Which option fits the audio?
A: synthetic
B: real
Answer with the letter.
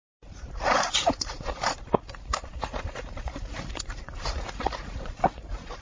A